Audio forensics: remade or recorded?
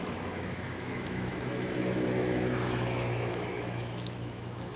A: remade